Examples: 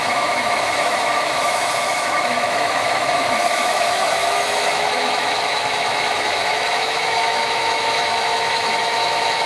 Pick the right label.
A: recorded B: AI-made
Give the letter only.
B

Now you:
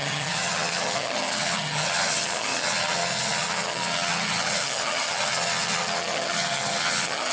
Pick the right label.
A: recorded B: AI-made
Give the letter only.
B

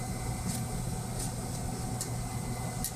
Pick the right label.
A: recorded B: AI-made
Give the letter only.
A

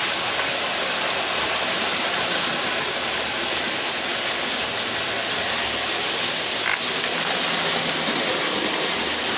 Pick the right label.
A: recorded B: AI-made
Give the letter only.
A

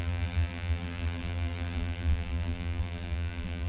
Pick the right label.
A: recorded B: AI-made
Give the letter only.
B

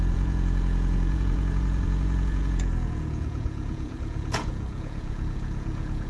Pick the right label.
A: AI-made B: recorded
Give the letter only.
A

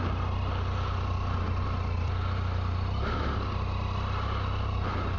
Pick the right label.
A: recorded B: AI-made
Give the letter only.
A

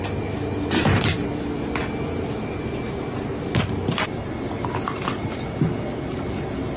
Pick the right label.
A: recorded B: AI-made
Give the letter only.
A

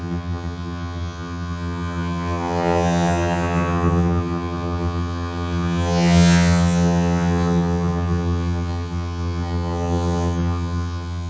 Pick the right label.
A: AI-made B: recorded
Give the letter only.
A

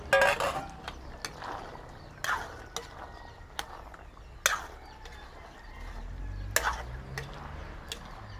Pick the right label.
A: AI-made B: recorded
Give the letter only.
B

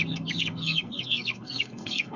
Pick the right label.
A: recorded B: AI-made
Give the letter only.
B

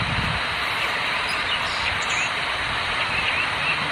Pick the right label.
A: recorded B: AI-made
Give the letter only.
B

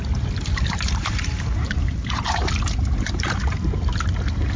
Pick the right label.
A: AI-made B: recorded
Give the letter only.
A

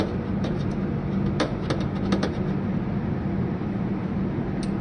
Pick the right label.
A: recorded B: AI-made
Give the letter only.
A